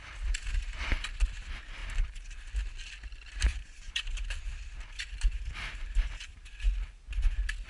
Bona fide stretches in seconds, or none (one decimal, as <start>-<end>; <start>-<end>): 0.0-1.8; 2.3-3.5; 6.7-7.7